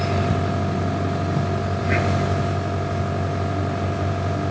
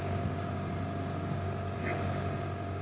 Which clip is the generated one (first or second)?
second